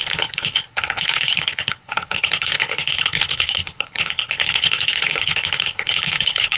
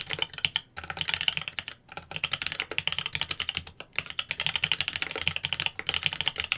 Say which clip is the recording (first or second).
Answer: second